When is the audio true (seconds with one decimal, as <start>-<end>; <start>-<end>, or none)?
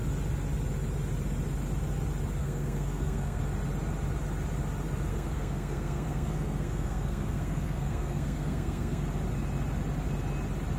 0.0-2.4; 3.4-5.1; 9.0-10.8